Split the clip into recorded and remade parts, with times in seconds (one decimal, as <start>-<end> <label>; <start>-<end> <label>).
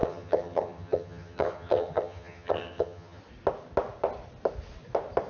0.0-3.2 remade; 3.2-5.3 recorded